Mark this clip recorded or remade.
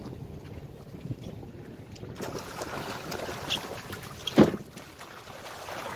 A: recorded